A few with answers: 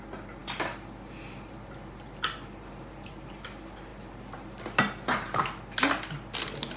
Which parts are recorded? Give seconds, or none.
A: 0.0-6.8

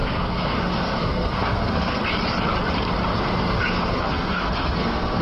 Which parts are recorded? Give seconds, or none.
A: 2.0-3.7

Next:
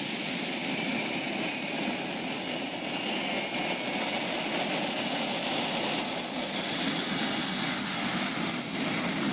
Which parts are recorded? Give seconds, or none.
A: 0.0-0.6; 5.3-9.3

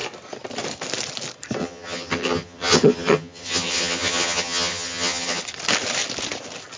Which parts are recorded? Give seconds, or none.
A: 0.0-1.6; 5.4-6.8

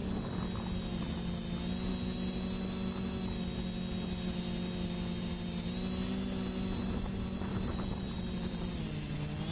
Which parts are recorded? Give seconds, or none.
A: 0.0-7.5; 8.8-9.5